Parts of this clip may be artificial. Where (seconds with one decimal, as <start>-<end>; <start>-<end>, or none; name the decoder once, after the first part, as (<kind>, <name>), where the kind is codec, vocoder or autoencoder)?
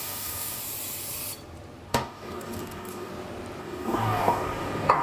0.0-0.6 (codec, DAC); 1.9-3.1; 3.6-5.0